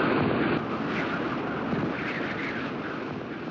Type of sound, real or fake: real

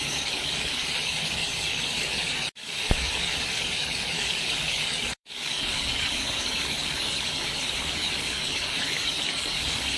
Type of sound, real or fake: fake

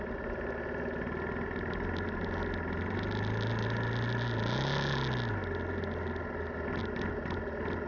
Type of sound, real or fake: real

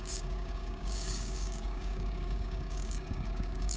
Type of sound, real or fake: fake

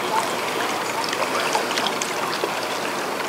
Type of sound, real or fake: real